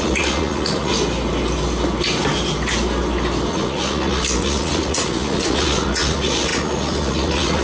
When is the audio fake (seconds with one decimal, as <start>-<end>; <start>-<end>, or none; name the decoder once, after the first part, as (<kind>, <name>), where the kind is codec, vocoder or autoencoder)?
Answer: 0.0-0.9 (vocoder, Vocos); 3.5-7.6